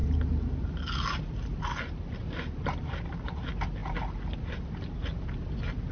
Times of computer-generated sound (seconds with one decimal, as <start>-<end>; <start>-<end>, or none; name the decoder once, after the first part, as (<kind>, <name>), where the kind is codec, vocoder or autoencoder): none